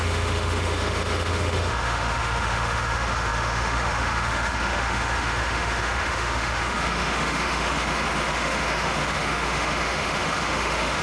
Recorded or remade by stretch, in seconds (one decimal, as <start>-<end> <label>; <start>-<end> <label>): 0.0-11.0 remade